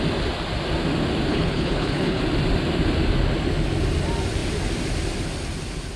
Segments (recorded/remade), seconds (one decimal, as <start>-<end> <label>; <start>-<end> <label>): 0.0-1.3 recorded; 1.3-2.2 remade; 2.2-6.0 recorded